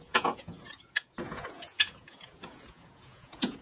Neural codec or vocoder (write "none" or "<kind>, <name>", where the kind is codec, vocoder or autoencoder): vocoder, Vocos